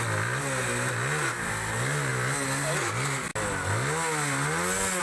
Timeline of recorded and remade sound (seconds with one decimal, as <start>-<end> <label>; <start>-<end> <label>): 0.0-5.0 recorded